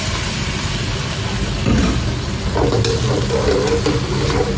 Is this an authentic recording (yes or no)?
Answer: yes